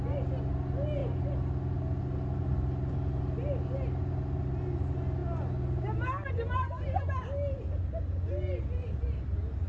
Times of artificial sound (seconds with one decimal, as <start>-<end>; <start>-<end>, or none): none